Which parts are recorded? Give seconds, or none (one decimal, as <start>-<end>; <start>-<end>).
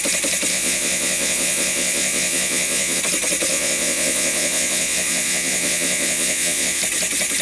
0.0-0.5; 3.0-3.5; 6.8-7.4